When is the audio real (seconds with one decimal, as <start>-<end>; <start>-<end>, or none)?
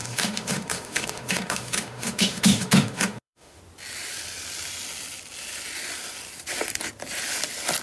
3.6-7.8